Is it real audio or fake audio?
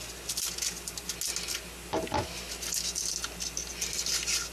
real